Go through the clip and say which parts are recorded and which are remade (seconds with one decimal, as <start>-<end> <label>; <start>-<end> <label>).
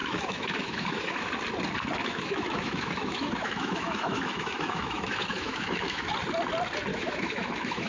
0.0-1.3 remade; 1.3-2.0 recorded; 2.0-6.1 remade; 6.1-6.9 recorded; 6.9-7.9 remade